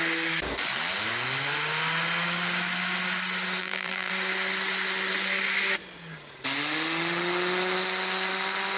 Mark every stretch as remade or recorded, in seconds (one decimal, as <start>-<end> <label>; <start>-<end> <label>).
0.0-3.6 recorded; 3.6-4.1 remade; 4.1-8.8 recorded